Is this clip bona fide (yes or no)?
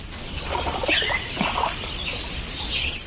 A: yes